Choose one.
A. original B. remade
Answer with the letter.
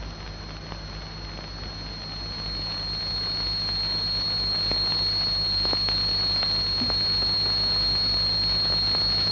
A